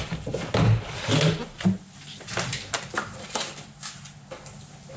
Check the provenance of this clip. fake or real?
real